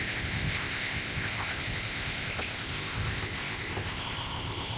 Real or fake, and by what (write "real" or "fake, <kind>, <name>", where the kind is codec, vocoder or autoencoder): fake, codec, ZipCodec